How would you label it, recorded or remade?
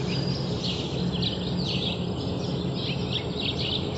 recorded